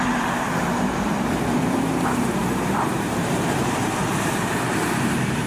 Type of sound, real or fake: fake